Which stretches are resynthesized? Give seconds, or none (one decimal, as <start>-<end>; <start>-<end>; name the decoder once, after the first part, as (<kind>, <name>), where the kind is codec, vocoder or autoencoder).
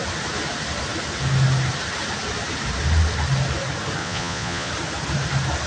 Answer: 4.0-4.7 (vocoder, Vocos)